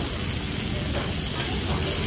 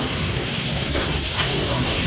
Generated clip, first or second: second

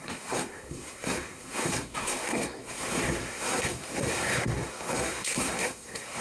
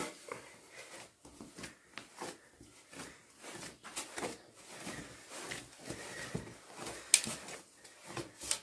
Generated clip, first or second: first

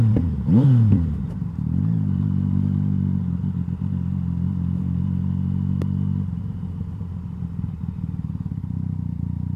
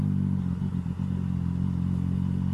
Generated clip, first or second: first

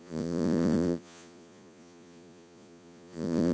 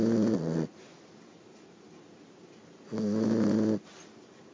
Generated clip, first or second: first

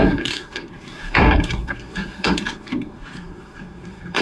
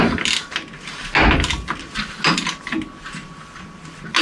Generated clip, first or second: first